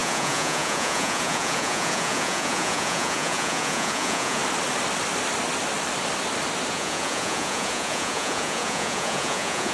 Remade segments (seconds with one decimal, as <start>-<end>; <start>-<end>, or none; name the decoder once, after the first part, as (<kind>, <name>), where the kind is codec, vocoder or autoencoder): 0.0-4.4 (vocoder, Vocos); 6.7-9.7